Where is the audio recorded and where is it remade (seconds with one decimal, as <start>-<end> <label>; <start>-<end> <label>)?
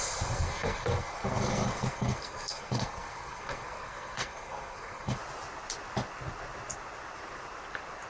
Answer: 0.0-5.2 remade; 5.2-8.1 recorded